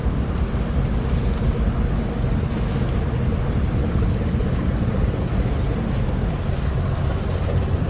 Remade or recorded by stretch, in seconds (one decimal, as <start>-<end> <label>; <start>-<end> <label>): 0.0-7.9 recorded

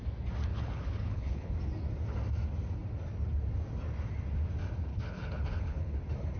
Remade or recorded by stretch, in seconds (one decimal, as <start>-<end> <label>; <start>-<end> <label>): 0.0-0.5 recorded; 0.5-1.5 remade; 1.5-4.9 recorded; 4.9-6.0 remade; 6.0-6.4 recorded